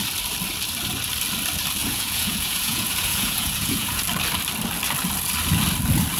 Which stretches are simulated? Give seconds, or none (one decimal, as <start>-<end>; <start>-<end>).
1.8-4.0